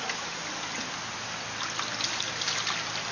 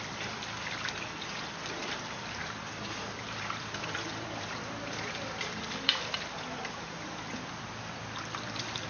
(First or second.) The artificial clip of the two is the second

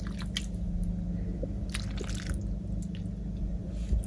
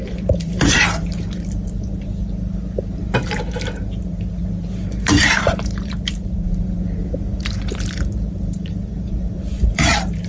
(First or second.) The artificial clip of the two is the second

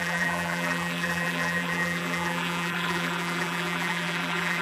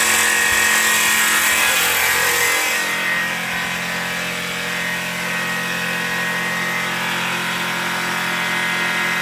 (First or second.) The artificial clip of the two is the first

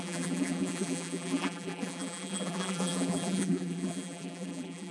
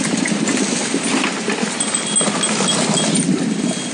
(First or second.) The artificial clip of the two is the first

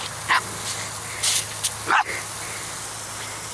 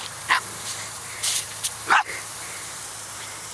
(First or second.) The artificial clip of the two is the second